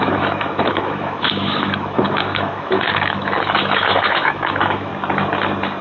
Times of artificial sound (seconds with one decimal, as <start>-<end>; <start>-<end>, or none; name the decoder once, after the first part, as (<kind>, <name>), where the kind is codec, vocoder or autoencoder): 0.0-4.9 (autoencoder, DAC-VAE)